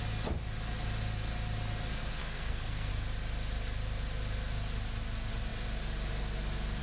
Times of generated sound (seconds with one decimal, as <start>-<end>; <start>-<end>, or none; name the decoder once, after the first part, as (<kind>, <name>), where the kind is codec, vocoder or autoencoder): 2.2-2.9 (codec, SNAC)

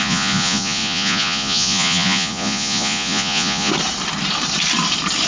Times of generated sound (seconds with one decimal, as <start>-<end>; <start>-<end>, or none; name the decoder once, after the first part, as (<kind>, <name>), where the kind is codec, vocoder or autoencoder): 0.0-3.7 (vocoder, Vocos)

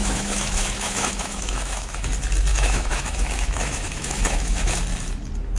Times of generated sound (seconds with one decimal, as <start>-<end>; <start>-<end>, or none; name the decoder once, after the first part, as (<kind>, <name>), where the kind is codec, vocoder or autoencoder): 0.0-2.1 (autoencoder, DAC-VAE); 2.5-4.8

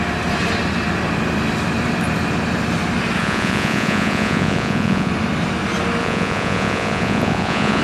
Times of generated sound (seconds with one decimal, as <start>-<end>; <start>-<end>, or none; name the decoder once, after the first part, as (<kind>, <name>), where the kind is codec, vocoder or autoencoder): 3.2-5.1 (vocoder, Vocos); 6.0-7.8

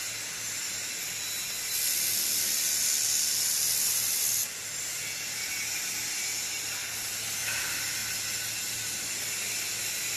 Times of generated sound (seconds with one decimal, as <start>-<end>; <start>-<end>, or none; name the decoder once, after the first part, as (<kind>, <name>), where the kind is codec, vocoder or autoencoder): none